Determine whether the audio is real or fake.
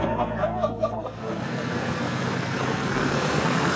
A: fake